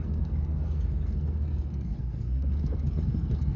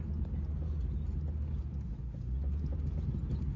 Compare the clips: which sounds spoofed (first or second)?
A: first